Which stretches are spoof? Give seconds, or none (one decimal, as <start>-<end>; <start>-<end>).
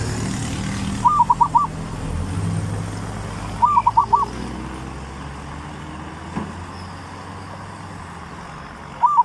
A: none